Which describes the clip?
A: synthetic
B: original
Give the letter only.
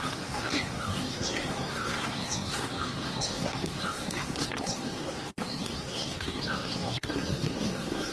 A